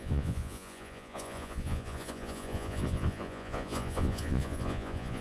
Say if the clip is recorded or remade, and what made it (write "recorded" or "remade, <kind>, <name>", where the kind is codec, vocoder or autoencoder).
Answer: remade, vocoder, Vocos